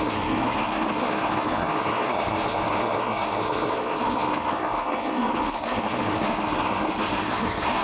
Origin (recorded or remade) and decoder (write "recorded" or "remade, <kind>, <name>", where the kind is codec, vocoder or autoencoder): remade, codec, SNAC